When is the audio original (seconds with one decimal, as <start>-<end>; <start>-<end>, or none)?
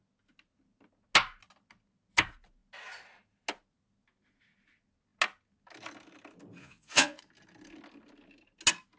0.0-6.6; 7.2-9.0